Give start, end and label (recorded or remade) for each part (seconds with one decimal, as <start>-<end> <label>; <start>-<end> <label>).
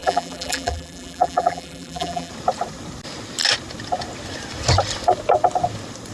0.0-2.3 remade; 2.3-6.1 recorded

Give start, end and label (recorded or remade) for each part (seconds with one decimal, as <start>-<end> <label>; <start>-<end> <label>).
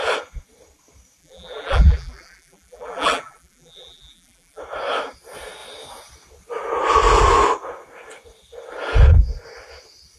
0.0-1.2 recorded; 1.2-4.6 remade; 4.6-10.2 recorded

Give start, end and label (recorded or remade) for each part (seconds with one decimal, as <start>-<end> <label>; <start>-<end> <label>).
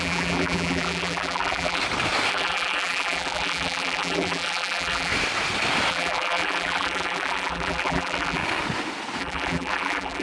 0.0-1.8 remade; 1.8-2.3 recorded; 2.3-5.1 remade; 5.1-5.9 recorded; 5.9-8.4 remade; 8.4-9.2 recorded; 9.2-10.2 remade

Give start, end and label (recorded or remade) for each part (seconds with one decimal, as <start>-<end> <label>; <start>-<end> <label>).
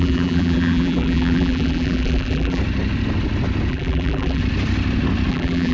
0.0-2.6 remade; 2.6-3.7 recorded; 3.7-4.4 remade; 4.4-5.3 recorded; 5.3-5.7 remade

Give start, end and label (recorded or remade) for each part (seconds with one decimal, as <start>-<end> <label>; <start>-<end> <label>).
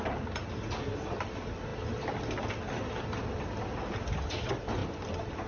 0.0-5.5 recorded